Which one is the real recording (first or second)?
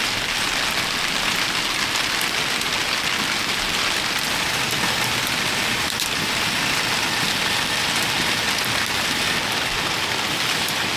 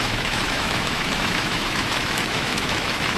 first